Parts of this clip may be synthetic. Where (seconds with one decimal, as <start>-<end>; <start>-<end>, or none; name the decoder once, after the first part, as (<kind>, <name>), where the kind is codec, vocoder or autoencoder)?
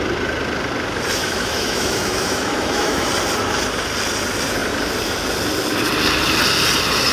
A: 1.2-3.1 (autoencoder, DAC-VAE)